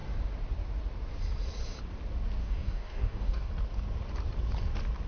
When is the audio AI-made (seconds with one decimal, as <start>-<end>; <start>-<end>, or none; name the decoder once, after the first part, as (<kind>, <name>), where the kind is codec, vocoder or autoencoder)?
2.4-3.5 (codec, DAC)